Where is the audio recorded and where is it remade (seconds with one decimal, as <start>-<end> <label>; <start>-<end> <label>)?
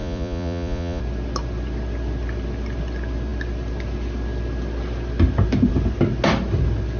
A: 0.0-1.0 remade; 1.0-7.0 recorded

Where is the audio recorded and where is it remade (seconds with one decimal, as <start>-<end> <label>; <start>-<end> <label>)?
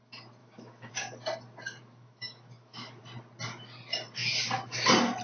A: 0.0-0.4 recorded; 0.4-0.9 remade; 0.9-1.8 recorded; 1.8-3.0 remade; 3.0-5.2 recorded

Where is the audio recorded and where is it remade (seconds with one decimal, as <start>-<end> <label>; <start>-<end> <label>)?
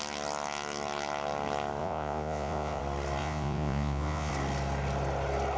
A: 0.0-1.8 recorded; 1.8-2.8 remade; 2.8-3.2 recorded; 3.2-4.3 remade; 4.3-5.6 recorded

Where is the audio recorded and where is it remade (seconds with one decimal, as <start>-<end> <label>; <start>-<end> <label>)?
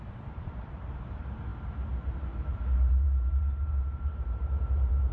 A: 0.0-5.1 remade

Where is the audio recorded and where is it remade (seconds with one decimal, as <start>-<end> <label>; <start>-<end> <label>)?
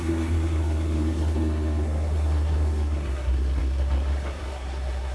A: 0.0-5.1 remade